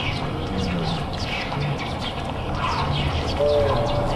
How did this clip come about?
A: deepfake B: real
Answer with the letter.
B